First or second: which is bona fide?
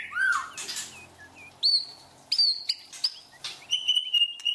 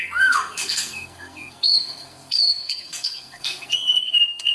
first